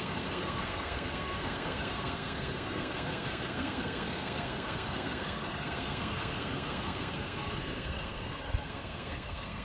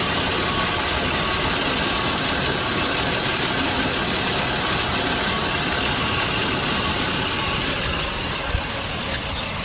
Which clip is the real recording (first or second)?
second